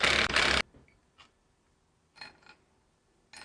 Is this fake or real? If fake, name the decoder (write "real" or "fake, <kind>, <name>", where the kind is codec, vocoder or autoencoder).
real